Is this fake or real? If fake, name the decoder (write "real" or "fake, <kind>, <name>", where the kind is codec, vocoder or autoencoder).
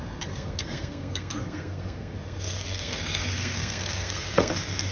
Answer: fake, codec, SNAC